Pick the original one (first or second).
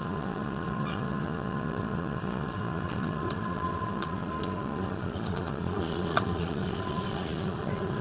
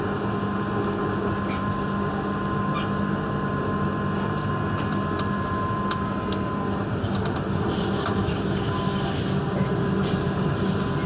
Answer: second